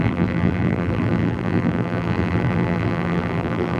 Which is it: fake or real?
fake